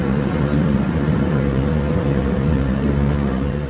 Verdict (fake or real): fake